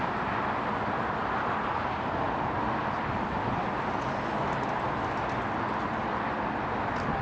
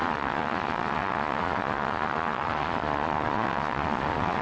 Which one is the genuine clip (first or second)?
first